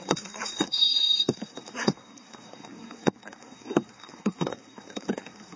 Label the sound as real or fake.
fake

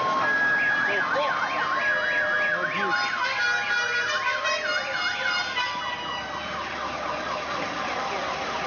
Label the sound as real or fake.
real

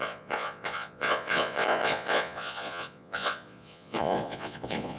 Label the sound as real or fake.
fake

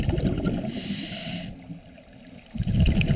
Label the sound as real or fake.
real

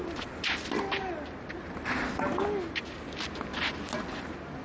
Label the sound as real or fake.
real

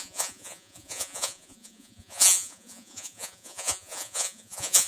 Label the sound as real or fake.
fake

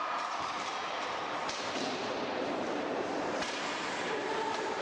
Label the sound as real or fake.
fake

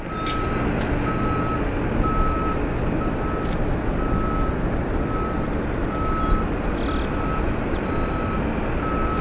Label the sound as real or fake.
real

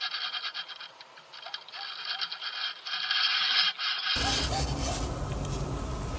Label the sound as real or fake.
real